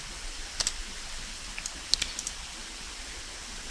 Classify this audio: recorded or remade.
recorded